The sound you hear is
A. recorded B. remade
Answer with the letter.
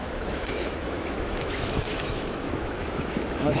B